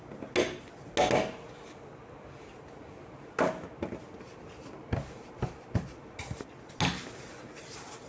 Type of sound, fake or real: real